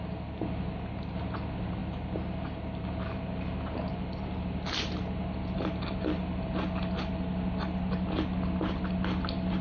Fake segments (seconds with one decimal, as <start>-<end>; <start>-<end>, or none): none